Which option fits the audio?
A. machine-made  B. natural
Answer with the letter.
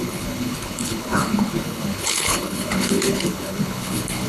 A